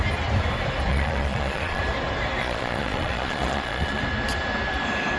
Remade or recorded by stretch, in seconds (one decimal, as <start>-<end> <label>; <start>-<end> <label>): 0.0-0.9 recorded; 0.9-1.8 remade; 1.8-2.4 recorded; 2.4-4.0 remade; 4.0-5.2 recorded